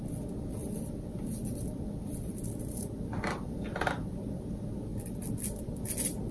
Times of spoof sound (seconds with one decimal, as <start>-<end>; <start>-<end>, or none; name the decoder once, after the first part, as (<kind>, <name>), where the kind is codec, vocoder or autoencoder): 0.6-4.4 (vocoder, BigVGAN v2); 4.9-5.6